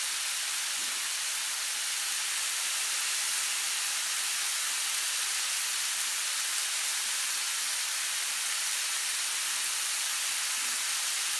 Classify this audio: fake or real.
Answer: real